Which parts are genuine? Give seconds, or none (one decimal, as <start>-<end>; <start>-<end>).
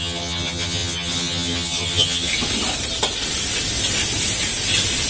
2.3-5.1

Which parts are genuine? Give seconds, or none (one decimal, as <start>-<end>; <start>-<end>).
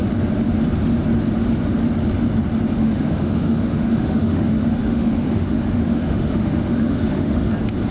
0.0-2.8; 7.5-7.9